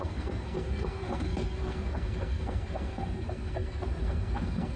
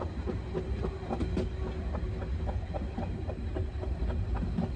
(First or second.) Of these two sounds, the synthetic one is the first